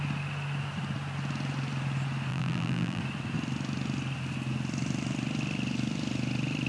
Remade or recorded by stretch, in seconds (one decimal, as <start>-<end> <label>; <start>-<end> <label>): 0.0-2.3 recorded; 2.3-3.0 remade; 3.0-6.7 recorded